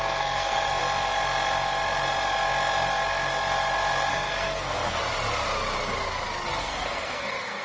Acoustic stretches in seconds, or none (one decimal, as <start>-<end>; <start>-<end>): 0.8-4.1; 5.0-6.6